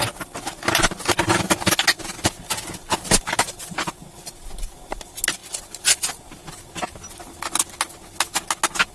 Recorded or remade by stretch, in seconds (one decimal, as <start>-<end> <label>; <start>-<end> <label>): 0.0-8.9 recorded